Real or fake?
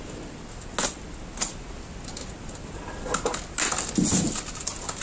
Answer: real